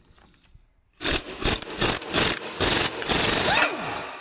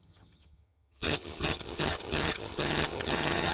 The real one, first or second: first